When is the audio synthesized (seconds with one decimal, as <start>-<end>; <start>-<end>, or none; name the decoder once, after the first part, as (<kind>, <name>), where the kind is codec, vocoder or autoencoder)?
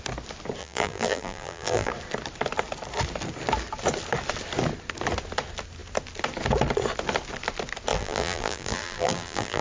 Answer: 0.6-1.9 (vocoder, BigVGAN v2); 7.9-9.6